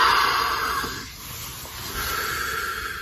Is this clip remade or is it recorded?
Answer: recorded